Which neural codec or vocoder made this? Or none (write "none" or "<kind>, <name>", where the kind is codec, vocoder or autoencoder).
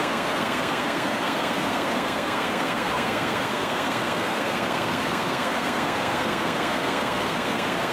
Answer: codec, SNAC